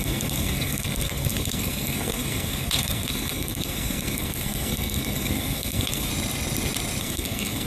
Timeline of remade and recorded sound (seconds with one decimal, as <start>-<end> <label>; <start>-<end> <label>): 0.0-6.1 remade; 6.1-7.0 recorded; 7.0-7.7 remade